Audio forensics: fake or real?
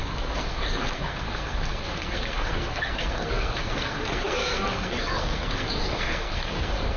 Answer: fake